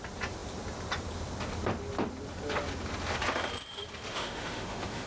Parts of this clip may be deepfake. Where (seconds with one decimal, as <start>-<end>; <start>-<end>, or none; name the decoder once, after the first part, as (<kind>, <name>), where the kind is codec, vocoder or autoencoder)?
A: 4.1-5.1 (autoencoder, DAC-VAE)